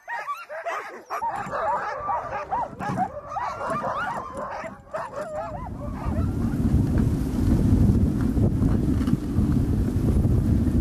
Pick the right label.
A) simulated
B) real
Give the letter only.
B